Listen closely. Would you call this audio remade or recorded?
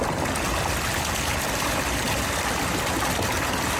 recorded